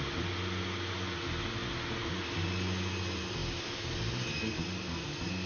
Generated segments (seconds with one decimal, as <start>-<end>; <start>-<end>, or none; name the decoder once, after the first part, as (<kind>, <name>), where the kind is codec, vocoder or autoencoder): none